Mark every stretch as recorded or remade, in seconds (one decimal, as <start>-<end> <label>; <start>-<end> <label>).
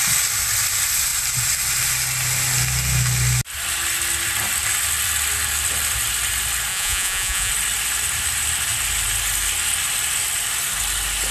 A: 0.0-6.7 recorded; 6.7-7.5 remade; 7.5-11.3 recorded